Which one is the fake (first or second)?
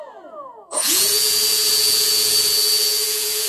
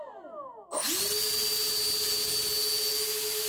first